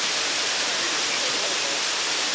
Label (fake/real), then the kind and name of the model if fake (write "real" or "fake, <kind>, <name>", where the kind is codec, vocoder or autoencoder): real